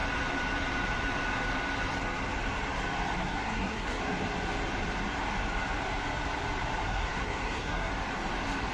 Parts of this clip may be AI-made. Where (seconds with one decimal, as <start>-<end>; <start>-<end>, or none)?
3.2-4.0; 6.8-7.9